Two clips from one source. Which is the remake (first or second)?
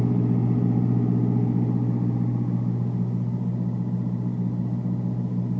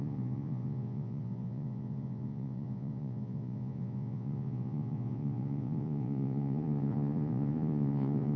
second